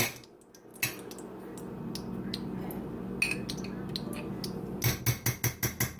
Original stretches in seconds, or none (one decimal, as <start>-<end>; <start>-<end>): 0.0-6.0